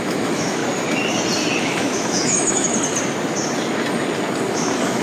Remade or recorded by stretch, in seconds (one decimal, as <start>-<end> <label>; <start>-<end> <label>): 0.0-0.6 remade; 0.6-1.6 recorded; 1.6-2.7 remade; 2.7-4.5 recorded; 4.5-5.0 remade